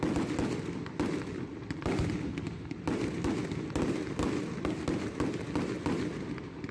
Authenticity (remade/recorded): recorded